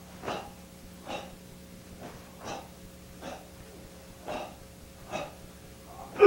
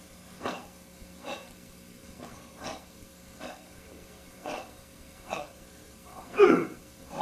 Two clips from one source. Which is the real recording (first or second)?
first